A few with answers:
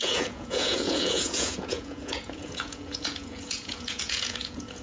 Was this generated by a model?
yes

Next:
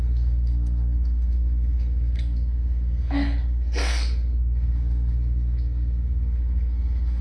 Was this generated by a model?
yes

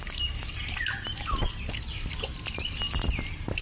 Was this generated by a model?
no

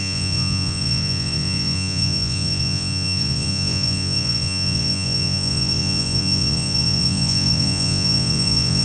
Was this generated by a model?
yes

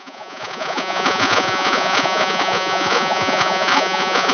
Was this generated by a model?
yes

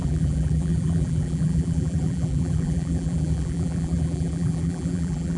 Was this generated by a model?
yes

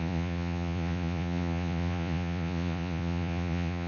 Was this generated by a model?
yes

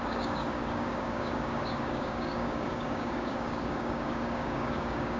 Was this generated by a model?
yes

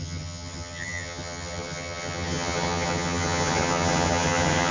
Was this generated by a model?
yes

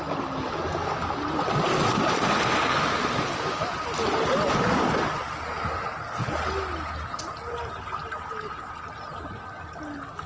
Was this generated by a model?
no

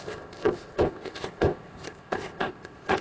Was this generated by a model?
yes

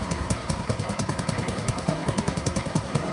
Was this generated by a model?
yes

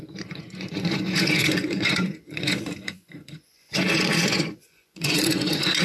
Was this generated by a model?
yes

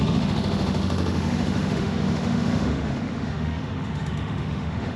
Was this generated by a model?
yes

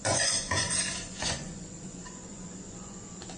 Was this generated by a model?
yes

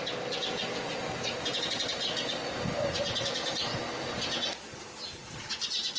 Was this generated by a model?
no